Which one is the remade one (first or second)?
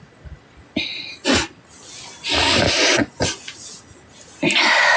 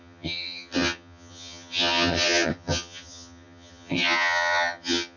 second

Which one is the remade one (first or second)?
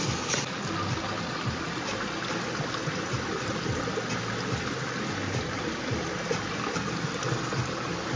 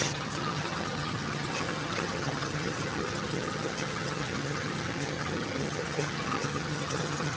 second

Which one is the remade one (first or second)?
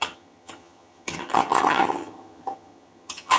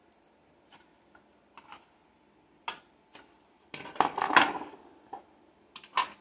first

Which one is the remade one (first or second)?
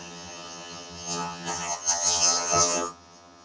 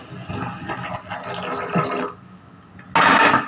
first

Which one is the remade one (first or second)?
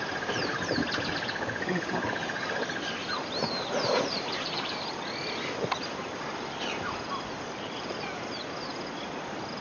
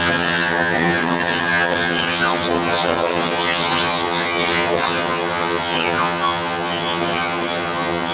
second